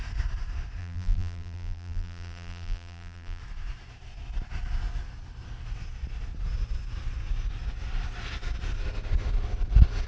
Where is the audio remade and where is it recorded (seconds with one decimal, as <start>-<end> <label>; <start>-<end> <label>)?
0.0-0.8 recorded; 0.8-3.4 remade; 3.4-10.1 recorded